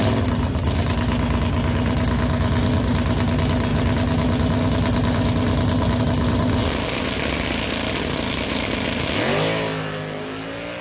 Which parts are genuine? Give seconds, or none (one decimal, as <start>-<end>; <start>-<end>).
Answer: 0.0-10.8